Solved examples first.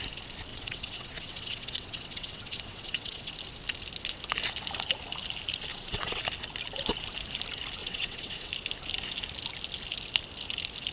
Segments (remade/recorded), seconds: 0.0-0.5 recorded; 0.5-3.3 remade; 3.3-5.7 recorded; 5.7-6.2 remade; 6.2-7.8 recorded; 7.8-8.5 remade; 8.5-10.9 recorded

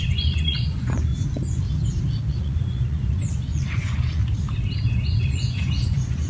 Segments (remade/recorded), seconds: 0.0-1.1 remade; 1.1-2.3 recorded; 2.3-4.2 remade; 4.2-4.9 recorded; 4.9-6.3 remade

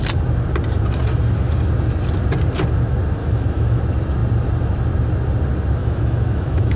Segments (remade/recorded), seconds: 0.0-3.2 recorded; 3.2-3.8 remade; 3.8-5.8 recorded; 5.8-6.8 remade

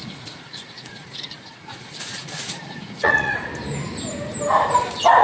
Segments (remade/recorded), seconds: 0.0-3.5 remade; 3.5-5.2 recorded